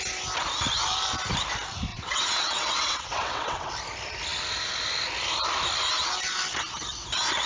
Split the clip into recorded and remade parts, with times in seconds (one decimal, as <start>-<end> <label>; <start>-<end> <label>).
0.0-1.9 recorded; 1.9-3.7 remade; 3.7-7.5 recorded